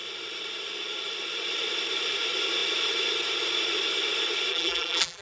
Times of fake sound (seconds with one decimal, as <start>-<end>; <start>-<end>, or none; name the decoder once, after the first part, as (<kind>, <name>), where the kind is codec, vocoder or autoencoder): 4.5-5.2 (vocoder, BigVGAN v2)